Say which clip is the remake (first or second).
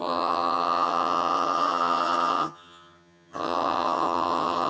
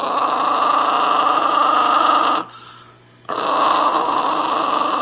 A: first